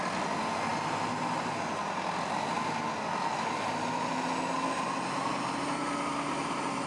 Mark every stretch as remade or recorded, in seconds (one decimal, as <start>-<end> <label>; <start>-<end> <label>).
0.0-6.9 recorded